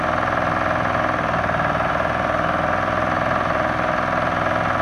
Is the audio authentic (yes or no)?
yes